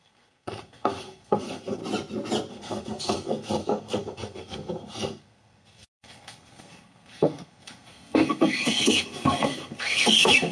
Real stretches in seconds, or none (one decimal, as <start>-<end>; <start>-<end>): 1.8-2.5

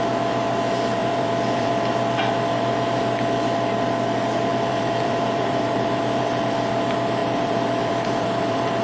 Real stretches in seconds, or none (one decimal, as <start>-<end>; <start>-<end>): 0.0-1.0; 1.7-4.5; 6.2-7.2

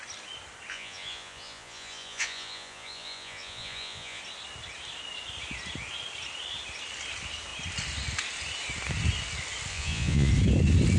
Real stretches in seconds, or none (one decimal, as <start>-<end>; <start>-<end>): 0.0-0.7; 4.2-9.7; 10.3-11.0

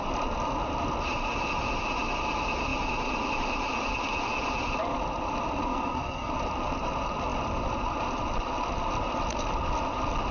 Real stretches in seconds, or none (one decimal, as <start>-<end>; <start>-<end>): 0.0-5.7; 6.3-10.3

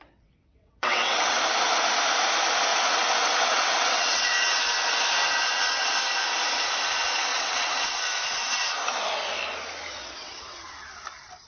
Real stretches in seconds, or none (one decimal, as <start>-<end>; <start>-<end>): 1.4-2.7; 4.6-7.3; 8.0-9.9; 10.7-11.5

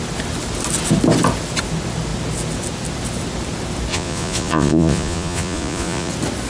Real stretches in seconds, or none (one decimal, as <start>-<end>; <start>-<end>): 0.0-3.9; 6.1-6.5